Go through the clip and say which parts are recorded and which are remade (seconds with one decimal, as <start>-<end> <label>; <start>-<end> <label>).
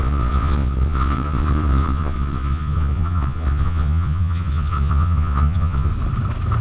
0.0-5.9 remade; 5.9-6.6 recorded